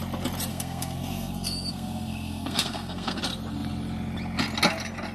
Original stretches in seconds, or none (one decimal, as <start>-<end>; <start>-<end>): 0.0-0.5; 3.2-5.1